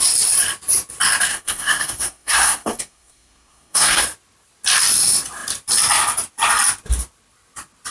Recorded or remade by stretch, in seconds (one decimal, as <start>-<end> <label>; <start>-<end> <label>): 0.0-1.3 recorded; 1.3-4.0 remade; 4.0-7.9 recorded